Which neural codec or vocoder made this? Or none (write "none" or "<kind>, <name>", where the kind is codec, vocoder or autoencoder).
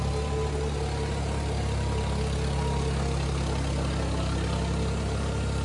none